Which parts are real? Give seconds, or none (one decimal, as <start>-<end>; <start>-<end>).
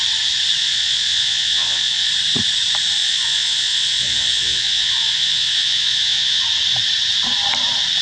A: 0.0-0.6; 2.1-3.0; 6.4-8.0